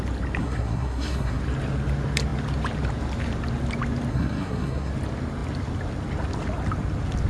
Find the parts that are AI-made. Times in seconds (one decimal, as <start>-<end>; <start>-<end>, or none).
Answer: 0.4-1.4; 4.1-4.9